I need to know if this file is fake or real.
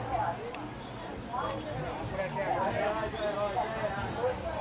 real